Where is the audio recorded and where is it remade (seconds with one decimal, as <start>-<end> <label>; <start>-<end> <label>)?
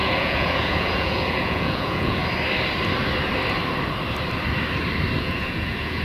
0.0-2.2 remade; 2.2-5.2 recorded; 5.2-6.0 remade